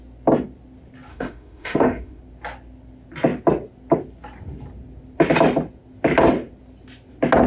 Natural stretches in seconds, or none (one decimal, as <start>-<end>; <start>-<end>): 0.0-1.1; 2.2-7.5